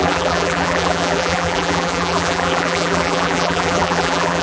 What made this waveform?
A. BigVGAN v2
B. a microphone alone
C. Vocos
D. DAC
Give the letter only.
A